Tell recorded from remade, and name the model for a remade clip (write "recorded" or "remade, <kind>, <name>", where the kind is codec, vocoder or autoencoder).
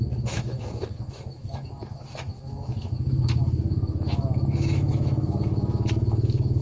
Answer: remade, autoencoder, DAC-VAE